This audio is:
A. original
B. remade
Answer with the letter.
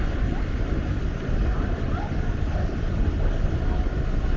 A